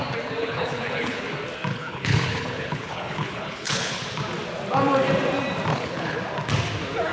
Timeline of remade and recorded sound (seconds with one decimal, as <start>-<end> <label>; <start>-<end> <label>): 0.0-0.4 recorded; 0.4-1.2 remade; 1.2-1.7 recorded; 1.7-4.0 remade; 4.0-5.7 recorded; 5.7-6.2 remade; 6.2-7.1 recorded